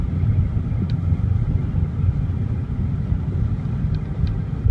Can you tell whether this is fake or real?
real